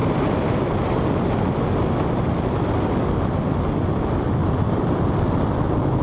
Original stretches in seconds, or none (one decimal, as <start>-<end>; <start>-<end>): 0.7-4.4; 5.4-6.0